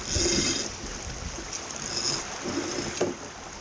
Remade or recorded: recorded